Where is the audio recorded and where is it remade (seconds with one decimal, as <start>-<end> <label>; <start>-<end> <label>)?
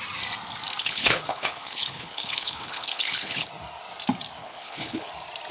0.0-0.8 recorded; 0.8-3.5 remade; 3.5-4.4 recorded; 4.4-5.1 remade; 5.1-5.5 recorded